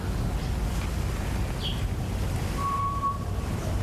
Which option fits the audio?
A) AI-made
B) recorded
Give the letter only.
B